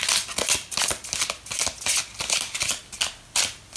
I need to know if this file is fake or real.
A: real